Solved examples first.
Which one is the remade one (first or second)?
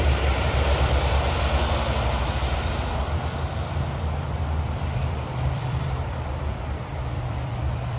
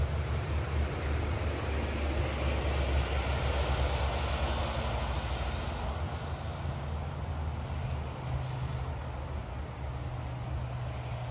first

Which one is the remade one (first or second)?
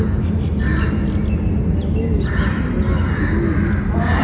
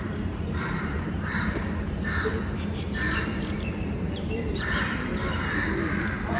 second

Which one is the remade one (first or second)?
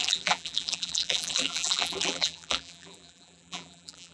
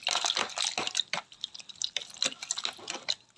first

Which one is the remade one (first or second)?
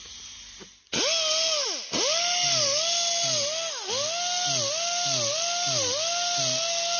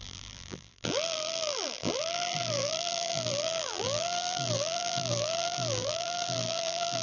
second